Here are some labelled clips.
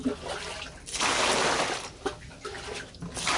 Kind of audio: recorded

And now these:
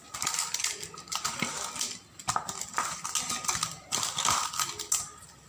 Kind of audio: recorded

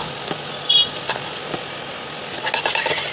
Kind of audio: recorded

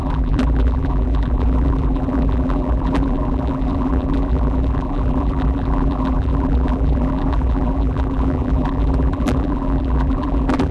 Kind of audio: remade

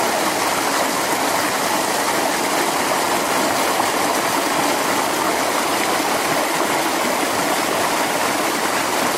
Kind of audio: recorded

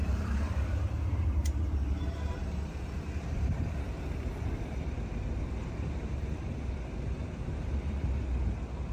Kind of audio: remade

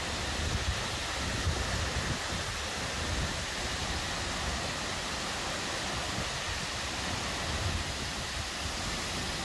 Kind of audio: recorded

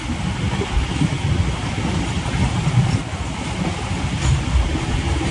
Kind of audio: recorded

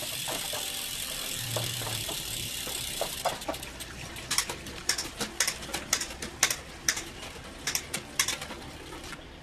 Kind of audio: remade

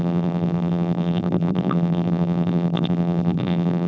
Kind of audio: remade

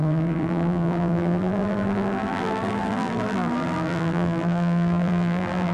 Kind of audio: remade